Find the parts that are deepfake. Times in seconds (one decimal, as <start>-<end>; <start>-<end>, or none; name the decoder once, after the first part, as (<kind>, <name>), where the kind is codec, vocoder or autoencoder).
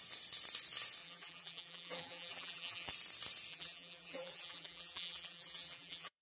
1.0-2.9 (vocoder, BigVGAN v2); 3.5-6.2